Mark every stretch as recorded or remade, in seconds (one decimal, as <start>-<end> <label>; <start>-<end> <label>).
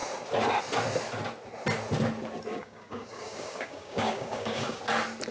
0.0-2.5 recorded; 2.5-4.8 remade; 4.8-5.3 recorded